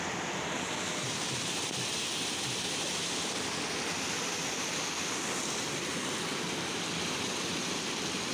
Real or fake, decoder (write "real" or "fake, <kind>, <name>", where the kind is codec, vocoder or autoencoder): real